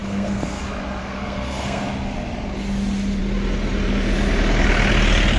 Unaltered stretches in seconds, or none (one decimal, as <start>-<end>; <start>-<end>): 0.6-1.0; 1.8-5.4